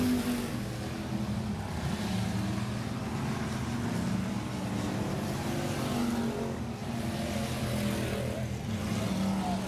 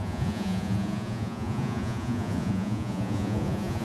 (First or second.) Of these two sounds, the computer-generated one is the second